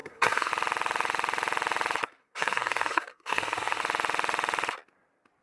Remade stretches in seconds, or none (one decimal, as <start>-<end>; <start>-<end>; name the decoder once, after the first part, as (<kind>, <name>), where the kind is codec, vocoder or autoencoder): 0.0-0.5 (codec, SNAC); 2.2-3.8